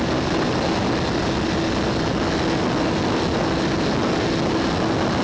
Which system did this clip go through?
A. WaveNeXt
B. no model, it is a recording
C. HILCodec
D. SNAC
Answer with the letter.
B